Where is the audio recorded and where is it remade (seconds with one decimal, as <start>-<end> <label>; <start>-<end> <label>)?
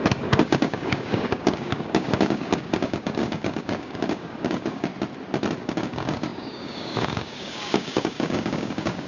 0.0-4.9 remade; 4.9-5.6 recorded; 5.6-9.1 remade